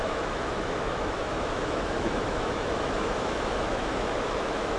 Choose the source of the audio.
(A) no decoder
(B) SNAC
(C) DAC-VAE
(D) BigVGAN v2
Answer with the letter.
C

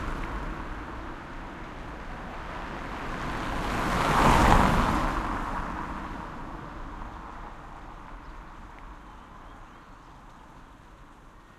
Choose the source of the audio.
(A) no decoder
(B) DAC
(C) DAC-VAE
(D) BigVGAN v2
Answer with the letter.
A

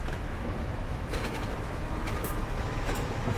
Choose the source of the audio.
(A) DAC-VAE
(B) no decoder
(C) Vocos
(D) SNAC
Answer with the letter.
A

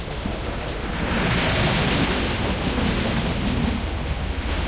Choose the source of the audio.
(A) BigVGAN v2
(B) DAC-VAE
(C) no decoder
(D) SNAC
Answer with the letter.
C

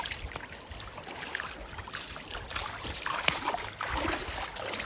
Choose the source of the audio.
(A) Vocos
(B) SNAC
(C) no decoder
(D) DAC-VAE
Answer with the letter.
C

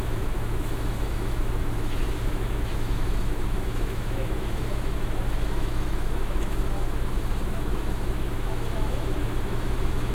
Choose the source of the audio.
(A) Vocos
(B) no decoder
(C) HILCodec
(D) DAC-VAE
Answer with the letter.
D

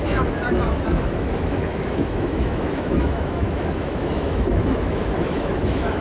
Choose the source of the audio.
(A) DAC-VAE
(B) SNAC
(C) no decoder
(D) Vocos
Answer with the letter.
A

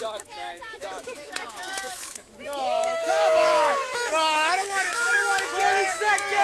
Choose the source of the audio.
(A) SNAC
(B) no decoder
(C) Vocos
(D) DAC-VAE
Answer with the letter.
D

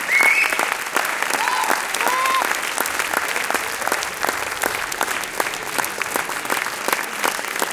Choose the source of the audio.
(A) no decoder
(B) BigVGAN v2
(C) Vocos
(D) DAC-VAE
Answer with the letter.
A